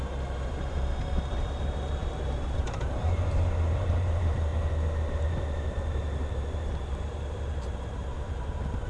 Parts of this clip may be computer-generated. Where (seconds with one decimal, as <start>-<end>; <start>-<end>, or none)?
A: 0.0-4.5; 5.1-8.9